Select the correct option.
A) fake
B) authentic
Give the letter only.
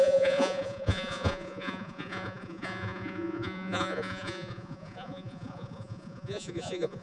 A